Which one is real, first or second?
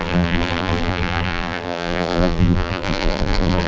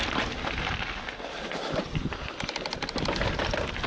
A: second